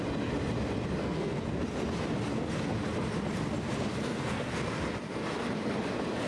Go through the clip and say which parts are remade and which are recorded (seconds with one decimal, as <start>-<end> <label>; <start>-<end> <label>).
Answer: 0.0-1.0 recorded; 1.0-1.6 remade; 1.6-3.9 recorded; 3.9-4.5 remade; 4.5-6.3 recorded